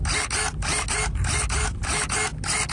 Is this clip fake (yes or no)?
no